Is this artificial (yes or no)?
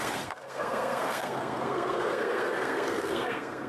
yes